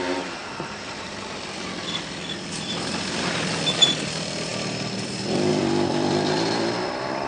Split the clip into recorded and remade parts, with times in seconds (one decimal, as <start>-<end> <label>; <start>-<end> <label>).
0.0-4.5 remade; 4.5-5.5 recorded; 5.5-7.3 remade